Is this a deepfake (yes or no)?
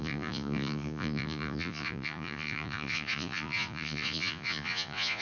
yes